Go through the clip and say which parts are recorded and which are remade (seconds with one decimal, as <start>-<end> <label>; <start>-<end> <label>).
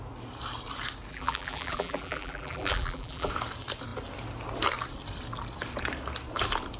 0.0-1.1 recorded; 1.1-3.3 remade; 3.3-6.8 recorded